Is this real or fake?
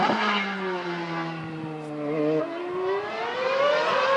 real